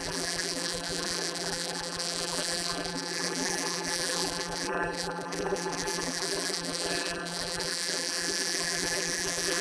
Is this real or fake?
fake